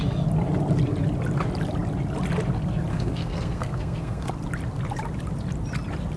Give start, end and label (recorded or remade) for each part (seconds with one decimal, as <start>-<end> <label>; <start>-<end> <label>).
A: 0.0-2.9 recorded; 2.9-4.3 remade; 4.3-6.2 recorded